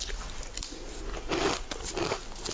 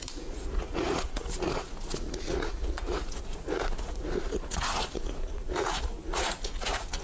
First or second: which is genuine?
first